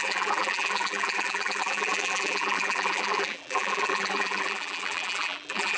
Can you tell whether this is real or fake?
fake